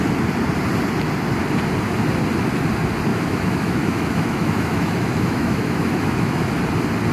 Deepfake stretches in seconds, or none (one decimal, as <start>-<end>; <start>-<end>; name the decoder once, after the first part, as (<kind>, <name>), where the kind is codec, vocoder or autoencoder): 3.1-6.5 (autoencoder, DAC-VAE)